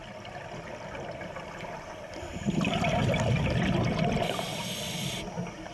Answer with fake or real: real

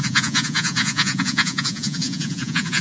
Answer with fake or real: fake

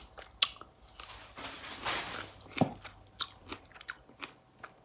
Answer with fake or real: real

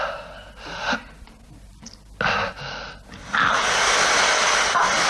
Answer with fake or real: real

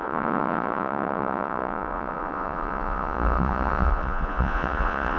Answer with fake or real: fake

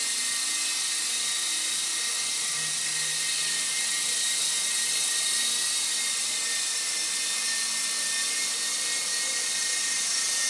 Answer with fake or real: real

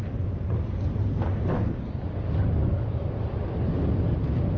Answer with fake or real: real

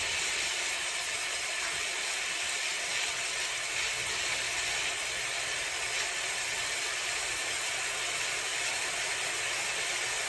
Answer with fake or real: real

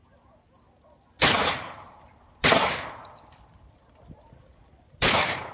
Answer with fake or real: real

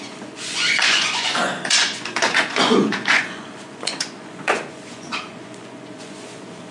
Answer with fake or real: fake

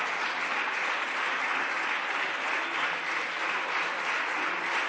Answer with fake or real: real